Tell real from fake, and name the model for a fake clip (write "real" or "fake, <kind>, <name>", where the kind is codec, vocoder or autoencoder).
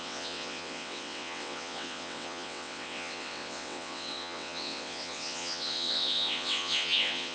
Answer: fake, vocoder, WaveNeXt